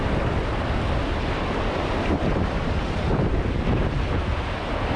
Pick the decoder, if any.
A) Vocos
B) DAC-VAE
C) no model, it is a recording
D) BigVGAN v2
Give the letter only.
D